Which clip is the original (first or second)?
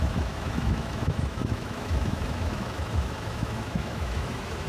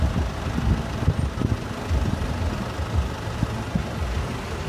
second